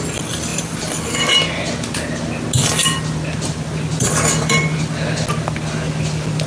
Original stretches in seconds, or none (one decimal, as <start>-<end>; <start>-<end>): 0.0-6.5